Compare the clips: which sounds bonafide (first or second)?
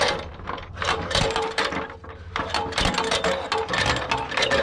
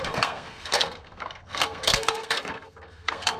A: first